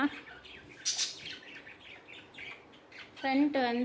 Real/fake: real